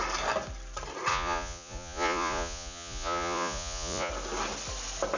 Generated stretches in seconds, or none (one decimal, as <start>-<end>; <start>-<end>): 1.1-4.1